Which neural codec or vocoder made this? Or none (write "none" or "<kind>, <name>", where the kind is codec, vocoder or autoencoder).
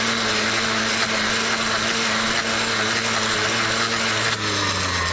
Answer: none